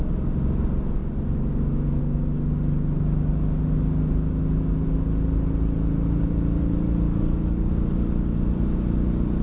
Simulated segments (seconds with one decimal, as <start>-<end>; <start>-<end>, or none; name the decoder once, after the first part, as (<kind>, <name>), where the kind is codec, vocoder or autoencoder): 7.1-7.7 (codec, DAC)